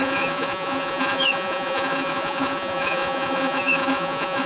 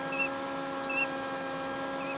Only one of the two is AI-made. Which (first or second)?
first